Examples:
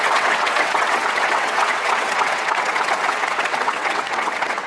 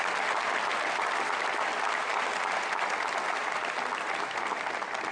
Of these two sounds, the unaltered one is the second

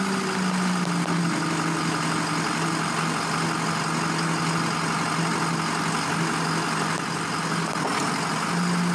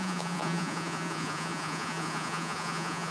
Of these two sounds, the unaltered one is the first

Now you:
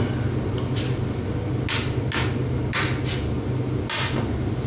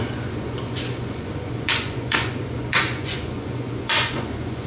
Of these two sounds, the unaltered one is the first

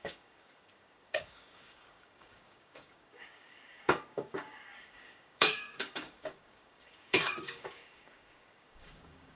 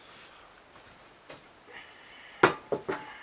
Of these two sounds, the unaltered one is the second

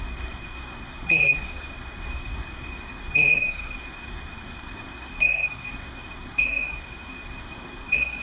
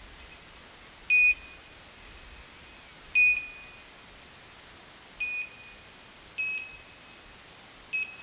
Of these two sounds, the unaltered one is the second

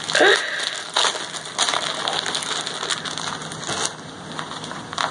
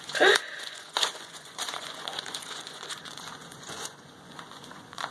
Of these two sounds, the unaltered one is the first